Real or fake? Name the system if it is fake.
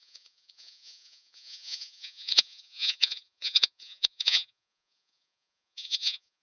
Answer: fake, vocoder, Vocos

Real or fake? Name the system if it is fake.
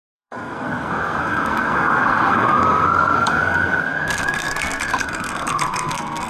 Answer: fake, codec, SNAC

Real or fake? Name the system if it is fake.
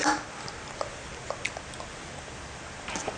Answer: real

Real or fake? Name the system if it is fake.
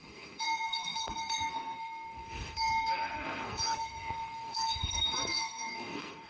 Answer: fake, codec, SNAC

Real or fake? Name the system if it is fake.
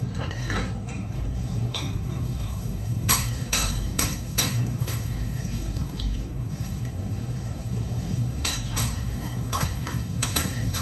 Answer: fake, codec, SNAC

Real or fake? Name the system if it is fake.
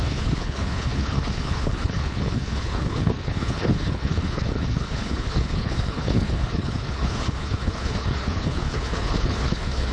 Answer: fake, codec, HILCodec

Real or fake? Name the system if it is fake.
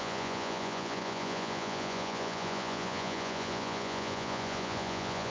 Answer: fake, vocoder, Vocos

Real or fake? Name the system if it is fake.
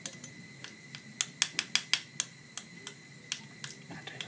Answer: real